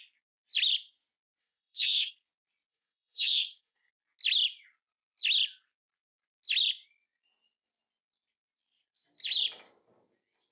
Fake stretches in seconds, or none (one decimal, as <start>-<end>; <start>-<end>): 1.4-2.1; 2.7-3.9